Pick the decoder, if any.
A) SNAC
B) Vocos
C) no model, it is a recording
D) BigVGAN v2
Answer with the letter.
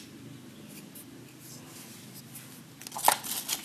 C